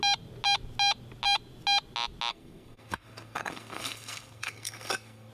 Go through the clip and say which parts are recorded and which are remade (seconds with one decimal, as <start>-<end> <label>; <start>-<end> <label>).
0.0-2.3 recorded; 2.3-5.3 remade